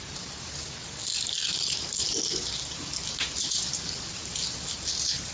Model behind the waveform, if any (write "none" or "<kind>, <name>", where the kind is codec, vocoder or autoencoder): none